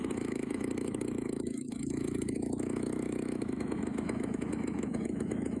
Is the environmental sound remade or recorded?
remade